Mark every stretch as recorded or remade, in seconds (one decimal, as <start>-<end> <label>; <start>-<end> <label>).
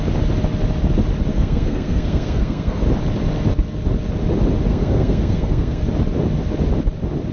0.0-1.3 recorded; 1.3-2.8 remade; 2.8-4.7 recorded; 4.7-5.8 remade; 5.8-7.3 recorded